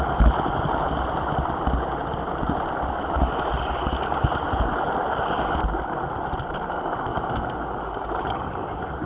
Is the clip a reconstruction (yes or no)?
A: no